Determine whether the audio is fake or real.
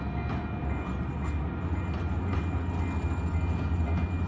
real